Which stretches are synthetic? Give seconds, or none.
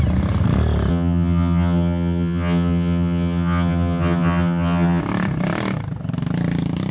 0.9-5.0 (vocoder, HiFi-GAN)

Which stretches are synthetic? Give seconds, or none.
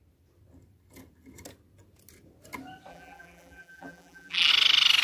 2.9-4.5 (vocoder, BigVGAN v2)